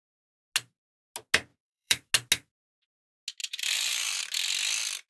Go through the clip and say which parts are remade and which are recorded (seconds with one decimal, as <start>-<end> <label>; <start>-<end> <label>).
0.0-1.5 recorded; 1.5-2.1 remade; 2.1-3.4 recorded; 3.4-4.2 remade; 4.2-5.1 recorded